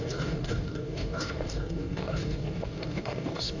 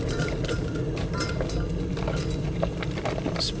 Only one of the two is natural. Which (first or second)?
second